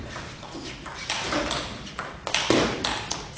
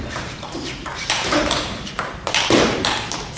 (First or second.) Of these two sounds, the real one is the first